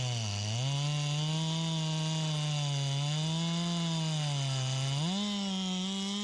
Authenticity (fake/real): real